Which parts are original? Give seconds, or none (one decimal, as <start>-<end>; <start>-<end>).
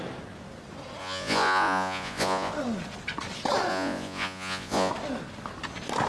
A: 0.0-1.0; 2.5-3.7; 4.9-6.1